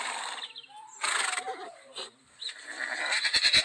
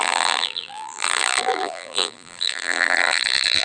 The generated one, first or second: second